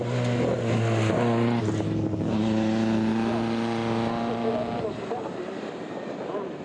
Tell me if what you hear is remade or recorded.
recorded